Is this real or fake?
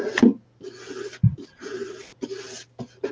real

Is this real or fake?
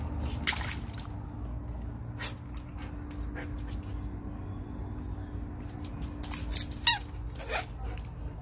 real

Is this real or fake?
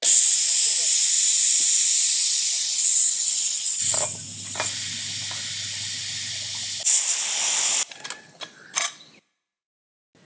real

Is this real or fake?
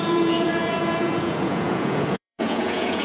fake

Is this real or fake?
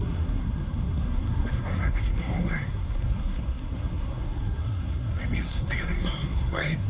fake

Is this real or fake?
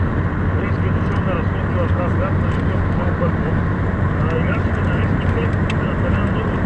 real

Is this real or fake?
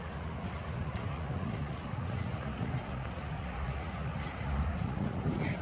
fake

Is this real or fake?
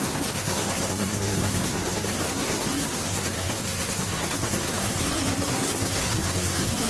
fake